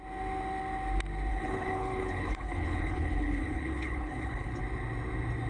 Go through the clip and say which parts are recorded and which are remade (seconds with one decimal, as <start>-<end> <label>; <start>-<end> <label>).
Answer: 0.0-1.3 recorded; 1.3-4.6 remade; 4.6-5.5 recorded